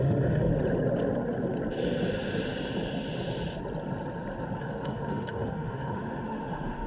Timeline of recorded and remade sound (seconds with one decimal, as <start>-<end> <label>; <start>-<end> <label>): 0.0-0.5 remade; 0.5-4.6 recorded; 4.6-6.9 remade